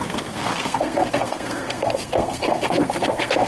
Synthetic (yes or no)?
yes